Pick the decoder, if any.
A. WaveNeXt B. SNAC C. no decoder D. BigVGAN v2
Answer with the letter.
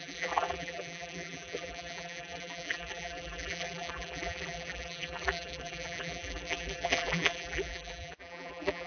D